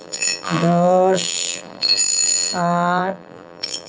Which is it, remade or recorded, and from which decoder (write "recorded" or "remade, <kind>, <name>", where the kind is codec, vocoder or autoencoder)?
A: remade, vocoder, BigVGAN v2